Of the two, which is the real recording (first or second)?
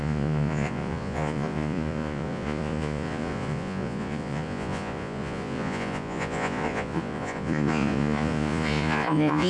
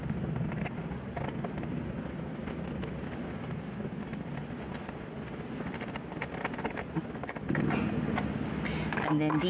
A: second